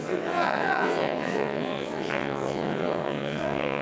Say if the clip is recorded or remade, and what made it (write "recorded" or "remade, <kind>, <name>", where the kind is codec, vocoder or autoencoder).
remade, vocoder, WaveNeXt